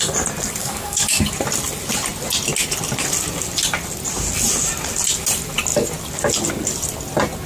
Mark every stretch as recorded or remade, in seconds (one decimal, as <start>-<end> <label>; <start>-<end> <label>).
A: 0.0-0.6 recorded; 0.6-1.2 remade; 1.2-7.5 recorded